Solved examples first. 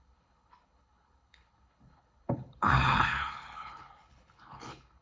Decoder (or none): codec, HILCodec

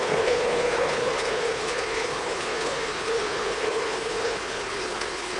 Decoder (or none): codec, HILCodec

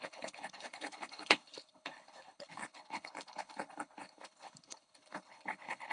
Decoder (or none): codec, HILCodec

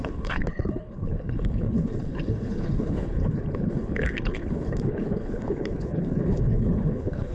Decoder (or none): codec, HILCodec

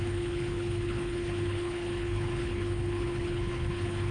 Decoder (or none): codec, HILCodec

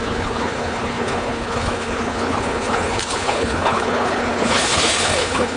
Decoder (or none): codec, HILCodec